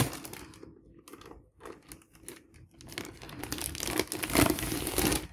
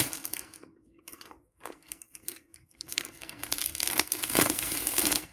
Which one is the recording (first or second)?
first